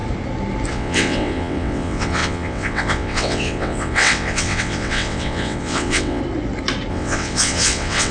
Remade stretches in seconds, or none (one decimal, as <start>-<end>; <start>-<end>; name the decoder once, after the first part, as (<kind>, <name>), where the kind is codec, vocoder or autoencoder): 0.7-6.2 (vocoder, WaveNeXt); 6.9-8.1